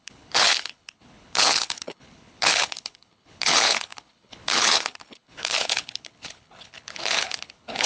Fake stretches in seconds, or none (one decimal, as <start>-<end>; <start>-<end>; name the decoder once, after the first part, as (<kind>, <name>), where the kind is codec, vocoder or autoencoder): 0.0-7.9 (codec, HILCodec)